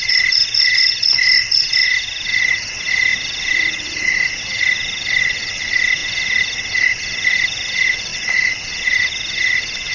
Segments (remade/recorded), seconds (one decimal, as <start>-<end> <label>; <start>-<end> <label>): 0.0-9.9 recorded

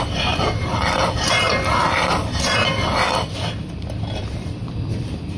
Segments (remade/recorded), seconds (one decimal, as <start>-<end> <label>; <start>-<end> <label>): 0.0-1.5 remade; 1.5-3.6 recorded; 3.6-5.4 remade

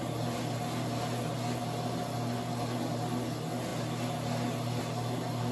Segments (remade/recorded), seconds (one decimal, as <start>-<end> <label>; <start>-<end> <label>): 0.0-5.5 recorded

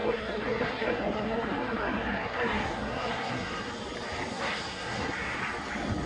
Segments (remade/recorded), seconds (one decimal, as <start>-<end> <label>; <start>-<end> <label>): 0.0-3.7 remade; 3.7-4.3 recorded; 4.3-5.4 remade; 5.4-6.1 recorded